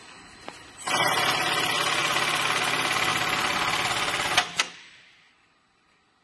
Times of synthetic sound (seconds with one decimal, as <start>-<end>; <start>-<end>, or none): none